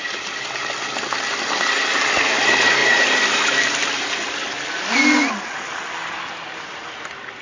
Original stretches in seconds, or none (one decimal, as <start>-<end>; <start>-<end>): 0.0-2.8; 4.4-7.4